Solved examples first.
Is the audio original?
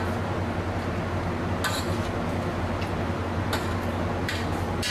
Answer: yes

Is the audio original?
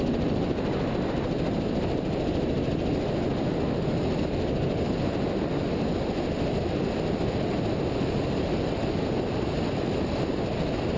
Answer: yes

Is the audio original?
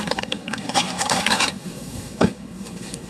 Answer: no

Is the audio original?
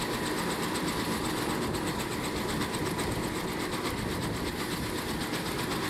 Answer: yes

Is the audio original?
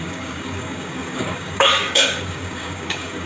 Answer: no